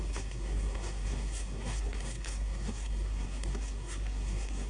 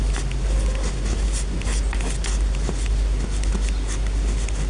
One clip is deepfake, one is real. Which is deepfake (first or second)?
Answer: first